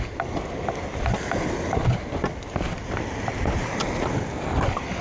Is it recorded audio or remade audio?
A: recorded